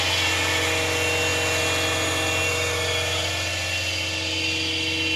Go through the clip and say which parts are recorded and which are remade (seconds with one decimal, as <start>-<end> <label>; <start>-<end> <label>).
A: 0.0-5.2 recorded